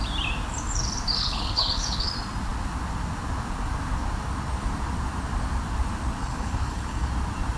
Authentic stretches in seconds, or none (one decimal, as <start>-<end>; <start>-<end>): 0.0-1.2; 2.1-6.2; 7.1-7.6